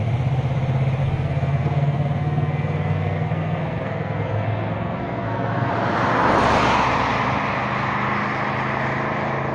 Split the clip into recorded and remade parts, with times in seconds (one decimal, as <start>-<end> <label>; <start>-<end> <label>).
0.0-1.0 recorded; 1.0-5.7 remade; 5.7-9.5 recorded